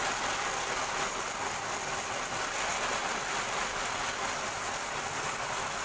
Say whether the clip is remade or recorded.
recorded